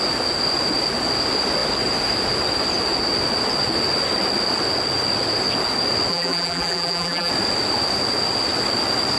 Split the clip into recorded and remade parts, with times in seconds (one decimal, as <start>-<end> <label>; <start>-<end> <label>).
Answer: 0.0-6.1 recorded; 6.1-7.3 remade; 7.3-9.2 recorded